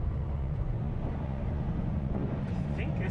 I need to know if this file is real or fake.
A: fake